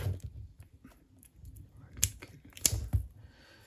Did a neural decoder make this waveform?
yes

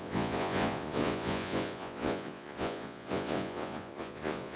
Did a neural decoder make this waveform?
yes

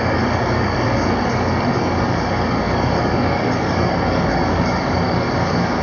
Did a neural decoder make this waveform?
yes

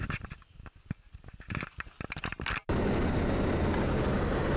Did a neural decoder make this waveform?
no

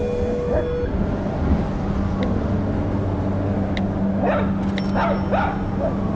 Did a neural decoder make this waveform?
no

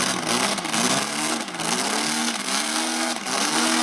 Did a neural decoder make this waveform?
yes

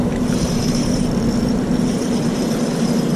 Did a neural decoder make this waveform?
yes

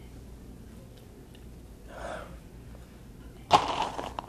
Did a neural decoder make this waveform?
no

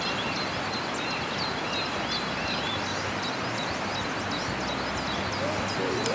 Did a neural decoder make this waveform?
no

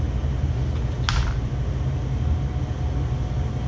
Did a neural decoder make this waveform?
no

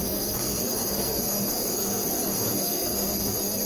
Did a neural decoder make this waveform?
yes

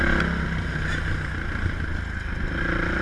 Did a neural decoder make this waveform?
no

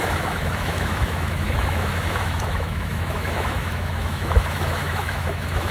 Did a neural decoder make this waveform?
yes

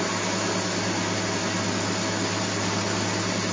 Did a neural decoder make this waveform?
no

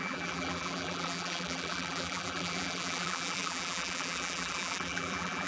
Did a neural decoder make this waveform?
yes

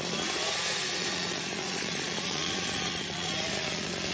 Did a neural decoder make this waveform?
yes